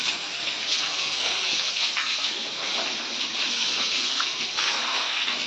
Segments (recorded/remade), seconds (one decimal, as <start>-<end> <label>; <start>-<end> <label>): 0.0-2.7 remade; 2.7-3.5 recorded; 3.5-5.5 remade